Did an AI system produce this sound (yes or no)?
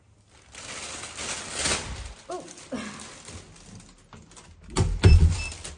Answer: no